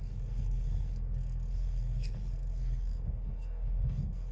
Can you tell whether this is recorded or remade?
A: remade